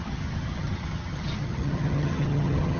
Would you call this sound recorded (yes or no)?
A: no